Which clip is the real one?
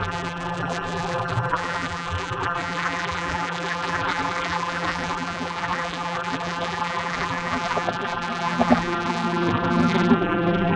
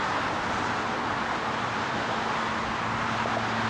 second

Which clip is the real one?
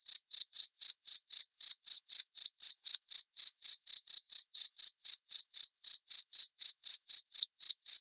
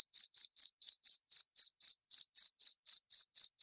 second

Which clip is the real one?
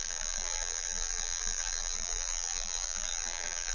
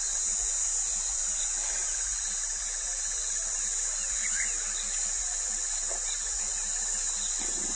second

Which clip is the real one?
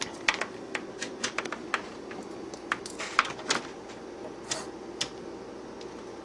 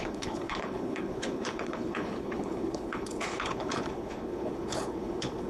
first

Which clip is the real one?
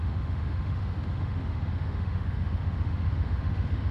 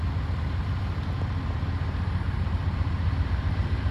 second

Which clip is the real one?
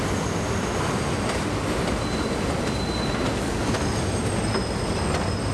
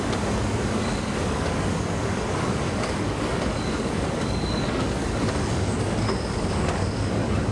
first